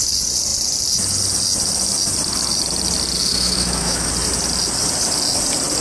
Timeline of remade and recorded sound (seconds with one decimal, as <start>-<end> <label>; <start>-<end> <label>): 0.0-3.3 recorded; 3.3-4.1 remade; 4.1-5.8 recorded